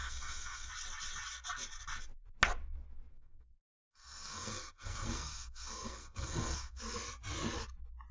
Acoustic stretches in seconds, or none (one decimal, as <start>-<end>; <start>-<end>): 0.7-3.1; 6.8-8.1